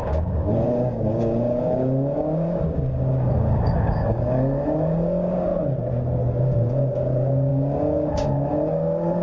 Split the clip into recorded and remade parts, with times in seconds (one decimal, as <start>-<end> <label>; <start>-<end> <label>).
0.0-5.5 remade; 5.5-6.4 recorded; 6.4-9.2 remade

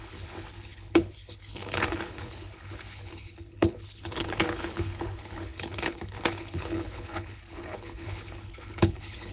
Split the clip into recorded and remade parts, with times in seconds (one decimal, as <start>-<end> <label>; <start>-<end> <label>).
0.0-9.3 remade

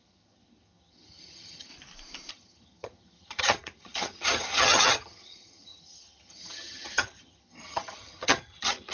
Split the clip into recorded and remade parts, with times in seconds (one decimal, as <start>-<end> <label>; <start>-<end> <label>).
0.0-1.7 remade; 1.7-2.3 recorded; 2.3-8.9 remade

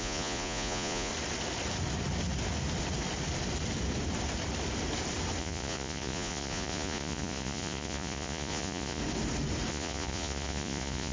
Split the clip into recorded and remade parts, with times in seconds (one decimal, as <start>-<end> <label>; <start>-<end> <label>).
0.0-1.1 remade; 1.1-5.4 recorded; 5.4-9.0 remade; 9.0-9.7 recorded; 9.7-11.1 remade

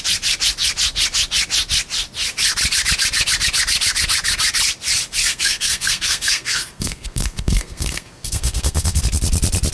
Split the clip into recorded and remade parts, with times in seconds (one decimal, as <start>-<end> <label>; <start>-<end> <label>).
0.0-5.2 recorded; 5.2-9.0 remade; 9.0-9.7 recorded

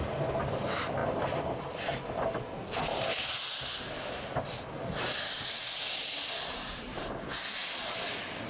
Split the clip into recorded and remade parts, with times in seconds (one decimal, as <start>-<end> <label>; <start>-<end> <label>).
0.0-8.5 recorded

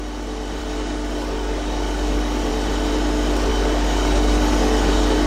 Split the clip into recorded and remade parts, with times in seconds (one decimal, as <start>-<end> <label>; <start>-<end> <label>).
0.0-0.6 recorded; 0.6-2.5 remade; 2.5-3.5 recorded; 3.5-5.3 remade

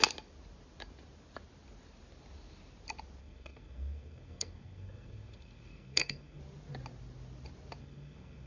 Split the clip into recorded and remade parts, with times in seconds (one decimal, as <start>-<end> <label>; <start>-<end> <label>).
0.0-3.2 recorded; 3.2-6.4 remade; 6.4-7.8 recorded; 7.8-8.5 remade